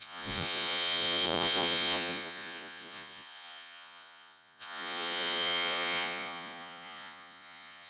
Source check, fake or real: fake